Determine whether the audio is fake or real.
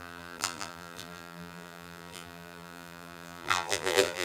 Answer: fake